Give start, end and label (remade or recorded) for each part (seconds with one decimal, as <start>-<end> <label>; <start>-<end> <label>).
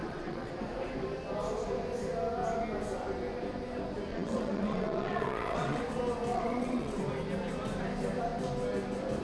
0.0-0.5 remade; 0.5-4.1 recorded; 4.1-5.8 remade; 5.8-6.3 recorded; 6.3-7.0 remade; 7.0-9.2 recorded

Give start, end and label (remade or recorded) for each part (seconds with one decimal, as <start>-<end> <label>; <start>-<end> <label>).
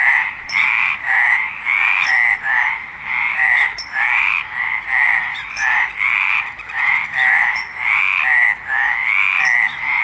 0.0-10.0 remade